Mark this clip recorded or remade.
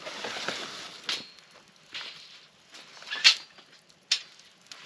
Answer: recorded